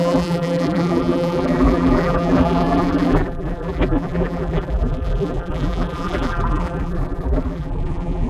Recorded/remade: remade